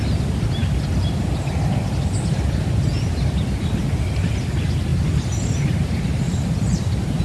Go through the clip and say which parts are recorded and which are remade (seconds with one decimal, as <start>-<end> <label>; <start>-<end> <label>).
0.0-7.2 recorded